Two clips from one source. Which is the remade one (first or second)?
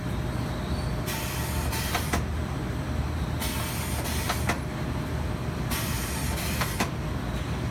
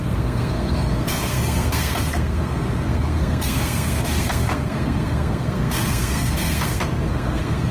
second